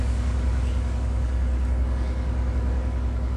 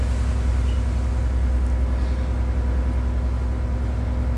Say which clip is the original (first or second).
second